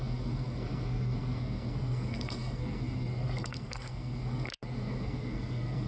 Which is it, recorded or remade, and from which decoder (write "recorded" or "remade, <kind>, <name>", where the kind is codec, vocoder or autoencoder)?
remade, codec, SNAC